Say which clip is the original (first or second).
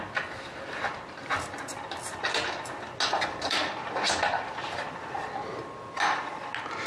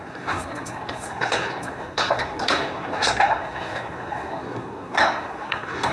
first